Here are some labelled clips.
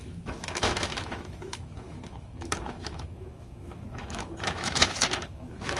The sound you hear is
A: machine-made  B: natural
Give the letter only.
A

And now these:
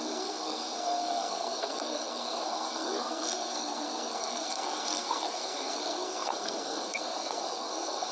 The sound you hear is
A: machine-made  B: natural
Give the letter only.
A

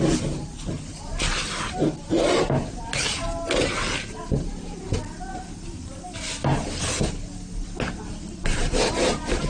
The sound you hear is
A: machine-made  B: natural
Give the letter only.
B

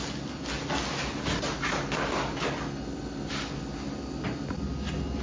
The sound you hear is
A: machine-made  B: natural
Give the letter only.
B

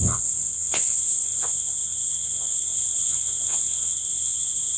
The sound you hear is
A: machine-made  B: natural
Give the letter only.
A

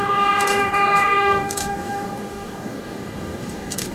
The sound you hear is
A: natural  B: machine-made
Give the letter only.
B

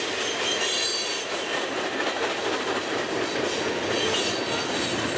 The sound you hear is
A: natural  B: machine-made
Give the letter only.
A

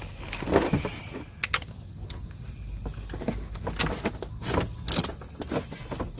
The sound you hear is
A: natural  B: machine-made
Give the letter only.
A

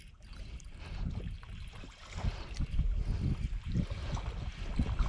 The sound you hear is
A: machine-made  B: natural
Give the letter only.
B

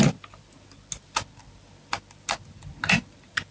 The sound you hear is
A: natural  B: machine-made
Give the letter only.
A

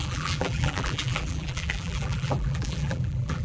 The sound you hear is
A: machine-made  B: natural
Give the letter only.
A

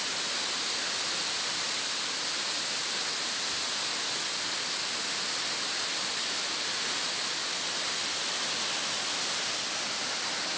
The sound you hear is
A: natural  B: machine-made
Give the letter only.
A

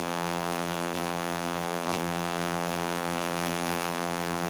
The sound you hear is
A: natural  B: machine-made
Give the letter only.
B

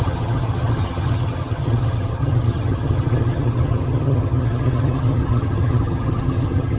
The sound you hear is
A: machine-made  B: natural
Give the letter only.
A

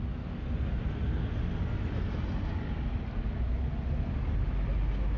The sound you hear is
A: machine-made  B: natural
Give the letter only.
B